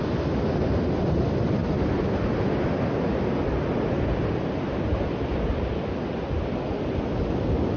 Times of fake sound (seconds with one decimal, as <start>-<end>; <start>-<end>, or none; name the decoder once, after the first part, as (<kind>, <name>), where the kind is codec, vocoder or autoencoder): none